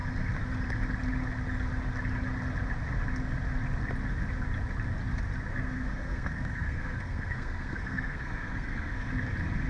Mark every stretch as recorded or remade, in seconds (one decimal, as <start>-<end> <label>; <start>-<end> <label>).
0.0-5.5 recorded; 5.5-9.1 remade; 9.1-9.7 recorded